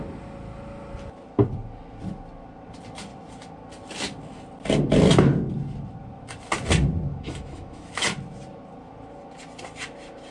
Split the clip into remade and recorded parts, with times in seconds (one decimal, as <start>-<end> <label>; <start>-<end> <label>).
0.0-7.1 recorded; 7.1-7.9 remade; 7.9-10.3 recorded